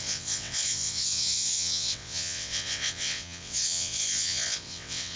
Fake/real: fake